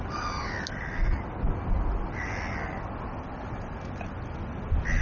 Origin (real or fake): real